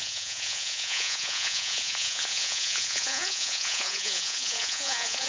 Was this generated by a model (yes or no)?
yes